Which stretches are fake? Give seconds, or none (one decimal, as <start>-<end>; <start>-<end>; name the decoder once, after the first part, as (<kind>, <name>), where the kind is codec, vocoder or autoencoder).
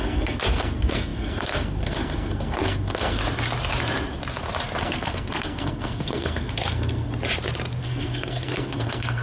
0.0-3.2 (codec, SNAC); 4.8-7.1; 7.8-9.2